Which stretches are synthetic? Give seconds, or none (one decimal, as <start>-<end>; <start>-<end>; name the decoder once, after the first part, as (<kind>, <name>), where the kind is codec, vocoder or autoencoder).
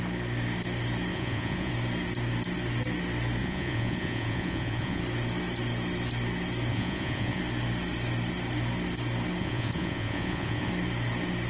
1.1-1.7 (vocoder, Vocos); 3.4-5.0; 6.7-7.4; 9.4-10.7